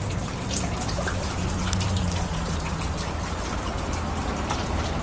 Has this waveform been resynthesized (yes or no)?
yes